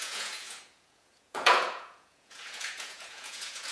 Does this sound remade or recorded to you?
remade